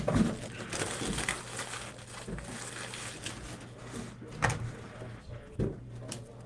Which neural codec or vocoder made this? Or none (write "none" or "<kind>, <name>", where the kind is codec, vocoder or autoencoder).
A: none